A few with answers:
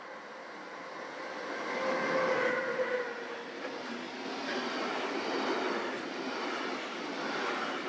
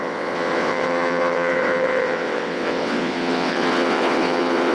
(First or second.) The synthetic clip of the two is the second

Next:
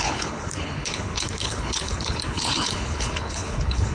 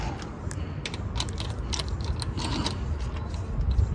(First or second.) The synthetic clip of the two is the first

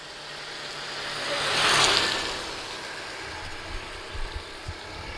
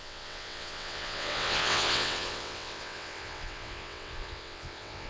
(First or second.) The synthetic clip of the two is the second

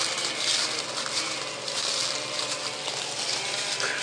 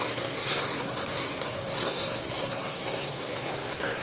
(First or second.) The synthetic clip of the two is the second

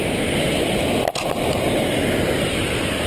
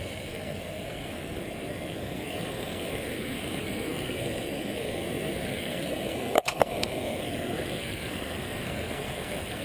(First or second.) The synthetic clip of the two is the second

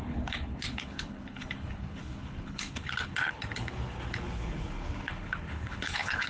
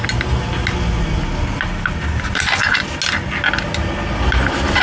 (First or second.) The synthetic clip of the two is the first